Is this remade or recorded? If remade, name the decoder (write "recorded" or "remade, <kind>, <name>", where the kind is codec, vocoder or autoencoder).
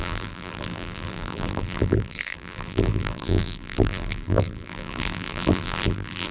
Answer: remade, vocoder, BigVGAN v2